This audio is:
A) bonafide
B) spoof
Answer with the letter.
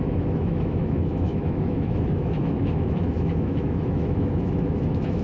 B